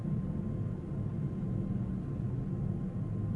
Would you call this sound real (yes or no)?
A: yes